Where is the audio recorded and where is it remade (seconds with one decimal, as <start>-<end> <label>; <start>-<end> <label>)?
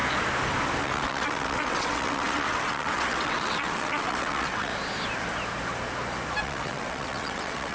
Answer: 0.0-0.8 recorded; 0.8-4.7 remade; 4.7-6.4 recorded; 6.4-7.7 remade